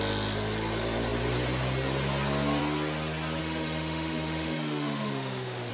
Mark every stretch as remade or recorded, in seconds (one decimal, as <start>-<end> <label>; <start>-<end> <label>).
0.0-3.4 recorded; 3.4-5.7 remade